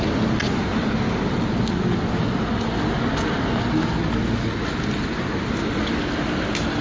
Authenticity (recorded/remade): recorded